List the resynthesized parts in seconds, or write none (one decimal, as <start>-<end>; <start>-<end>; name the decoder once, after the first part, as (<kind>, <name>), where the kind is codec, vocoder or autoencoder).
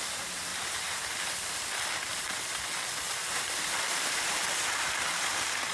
0.5-1.0 (vocoder, BigVGAN v2); 2.1-5.7